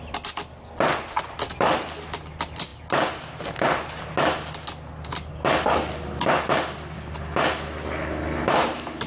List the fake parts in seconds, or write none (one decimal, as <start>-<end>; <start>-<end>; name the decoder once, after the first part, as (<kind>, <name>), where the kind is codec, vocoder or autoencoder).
none